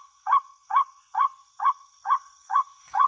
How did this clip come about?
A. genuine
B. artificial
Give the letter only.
B